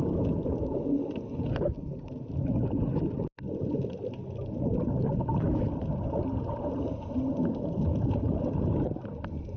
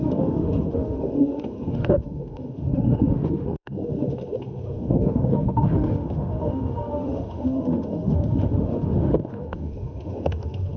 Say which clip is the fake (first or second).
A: second